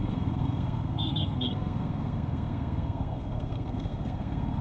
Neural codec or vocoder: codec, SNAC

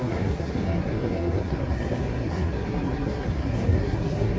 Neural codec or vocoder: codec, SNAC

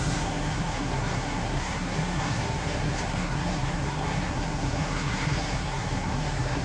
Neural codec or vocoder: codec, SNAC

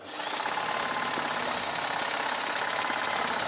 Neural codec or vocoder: none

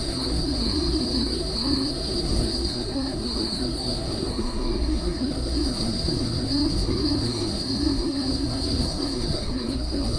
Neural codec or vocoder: codec, SNAC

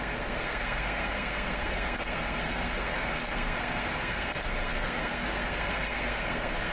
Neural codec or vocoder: codec, SNAC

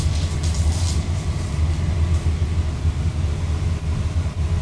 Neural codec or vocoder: none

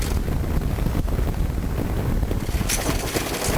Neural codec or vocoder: none